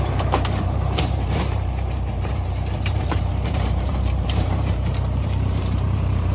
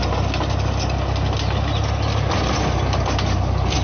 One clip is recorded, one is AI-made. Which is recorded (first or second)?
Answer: second